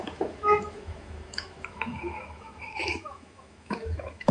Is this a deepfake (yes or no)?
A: yes